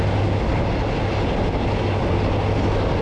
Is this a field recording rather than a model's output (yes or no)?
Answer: yes